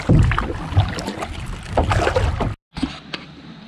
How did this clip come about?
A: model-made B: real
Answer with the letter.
B